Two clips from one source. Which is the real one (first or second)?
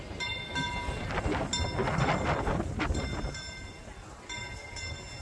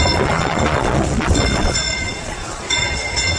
first